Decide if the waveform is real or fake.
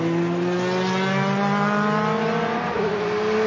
real